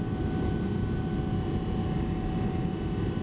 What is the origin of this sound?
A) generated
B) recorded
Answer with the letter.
B